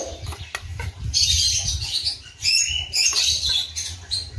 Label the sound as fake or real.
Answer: real